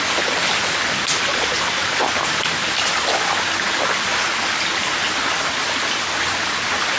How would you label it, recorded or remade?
recorded